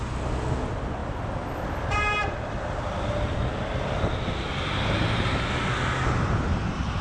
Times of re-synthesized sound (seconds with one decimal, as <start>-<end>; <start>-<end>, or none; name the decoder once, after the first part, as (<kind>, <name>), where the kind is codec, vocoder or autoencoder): none